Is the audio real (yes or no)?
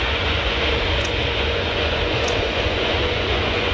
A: no